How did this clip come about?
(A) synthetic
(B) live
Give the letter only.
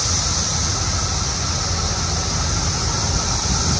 B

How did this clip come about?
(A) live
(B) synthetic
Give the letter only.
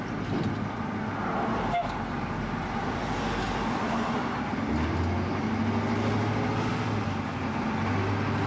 A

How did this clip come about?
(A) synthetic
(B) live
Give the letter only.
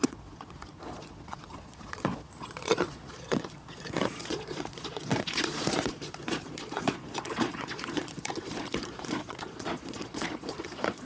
A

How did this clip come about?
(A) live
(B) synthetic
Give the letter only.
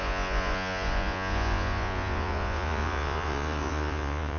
B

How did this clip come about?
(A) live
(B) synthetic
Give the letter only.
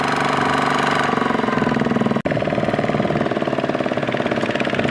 A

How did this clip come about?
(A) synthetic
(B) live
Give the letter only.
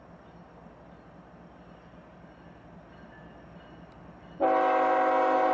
B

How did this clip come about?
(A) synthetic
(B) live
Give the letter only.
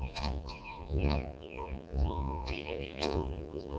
A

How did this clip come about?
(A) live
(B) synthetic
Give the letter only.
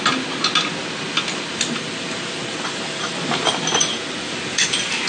A